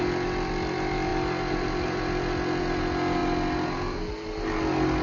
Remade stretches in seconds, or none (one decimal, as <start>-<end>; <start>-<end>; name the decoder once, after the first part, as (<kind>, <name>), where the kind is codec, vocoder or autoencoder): none